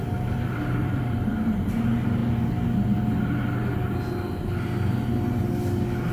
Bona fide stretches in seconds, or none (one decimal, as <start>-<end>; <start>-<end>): 2.2-6.1